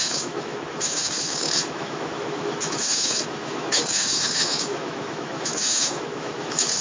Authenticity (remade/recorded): remade